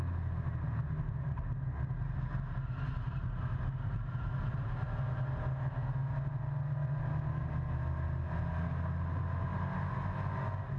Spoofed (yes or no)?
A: no